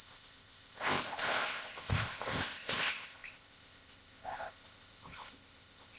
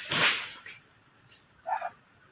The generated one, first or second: first